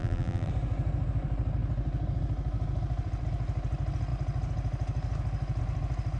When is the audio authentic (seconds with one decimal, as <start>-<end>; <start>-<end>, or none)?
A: 0.5-6.2